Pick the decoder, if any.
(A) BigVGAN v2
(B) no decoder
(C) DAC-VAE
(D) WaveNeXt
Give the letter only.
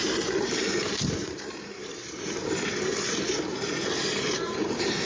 A